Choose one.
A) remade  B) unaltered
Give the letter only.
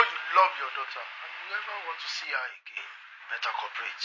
B